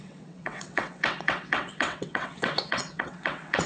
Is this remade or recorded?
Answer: remade